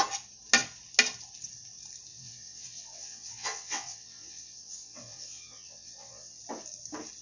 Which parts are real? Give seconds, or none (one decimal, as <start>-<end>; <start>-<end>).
0.0-2.1; 6.4-7.2